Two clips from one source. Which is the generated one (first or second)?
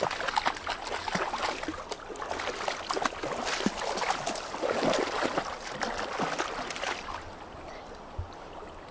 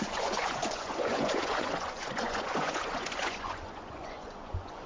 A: second